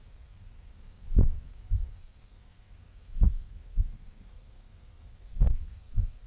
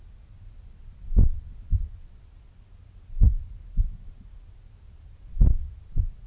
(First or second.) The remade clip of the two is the first